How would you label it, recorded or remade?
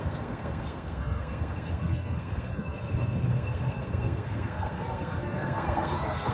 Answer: remade